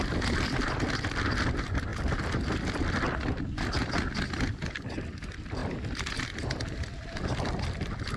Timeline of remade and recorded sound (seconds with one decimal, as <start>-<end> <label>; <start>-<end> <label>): 0.0-5.6 recorded; 5.6-6.2 remade; 6.2-8.2 recorded